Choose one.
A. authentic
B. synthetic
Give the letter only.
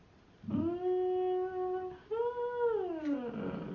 A